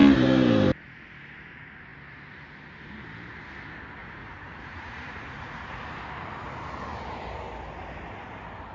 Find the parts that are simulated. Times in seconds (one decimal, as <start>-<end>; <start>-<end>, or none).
4.0-5.9